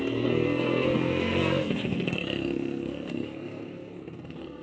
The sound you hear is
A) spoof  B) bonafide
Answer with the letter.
A